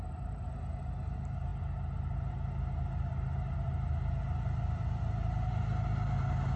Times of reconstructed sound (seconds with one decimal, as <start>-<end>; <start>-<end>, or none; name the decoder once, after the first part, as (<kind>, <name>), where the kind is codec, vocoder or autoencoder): none